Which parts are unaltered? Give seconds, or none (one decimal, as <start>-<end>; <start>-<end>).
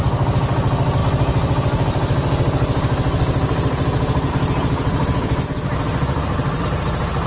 0.0-7.3